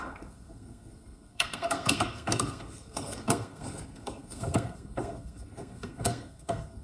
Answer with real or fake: fake